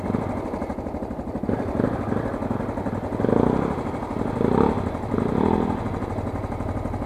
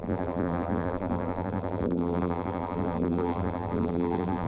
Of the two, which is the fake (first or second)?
second